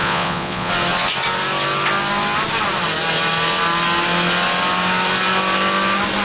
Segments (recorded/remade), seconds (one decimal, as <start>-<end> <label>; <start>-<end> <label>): 0.0-0.7 remade; 0.7-6.2 recorded